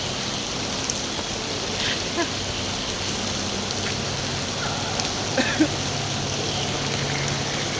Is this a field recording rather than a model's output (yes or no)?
yes